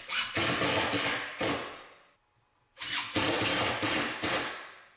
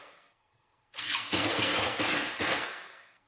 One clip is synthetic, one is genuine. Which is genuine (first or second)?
first